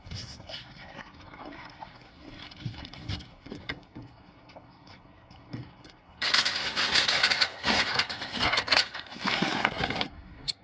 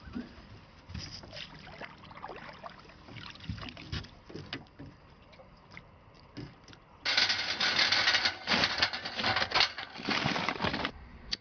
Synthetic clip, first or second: first